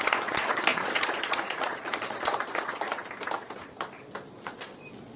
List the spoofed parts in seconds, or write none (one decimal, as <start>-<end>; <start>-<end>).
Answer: 0.0-3.0; 4.4-5.2